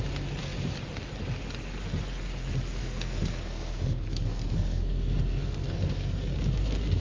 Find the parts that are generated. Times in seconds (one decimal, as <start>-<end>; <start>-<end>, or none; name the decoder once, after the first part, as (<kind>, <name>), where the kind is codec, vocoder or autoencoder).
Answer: 2.8-7.0 (codec, SNAC)